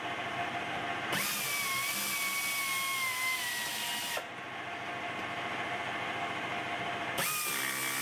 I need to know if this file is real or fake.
real